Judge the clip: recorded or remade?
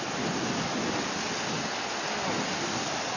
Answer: recorded